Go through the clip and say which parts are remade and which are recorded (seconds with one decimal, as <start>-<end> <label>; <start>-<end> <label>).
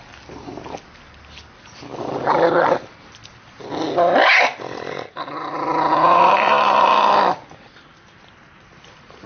0.0-9.3 recorded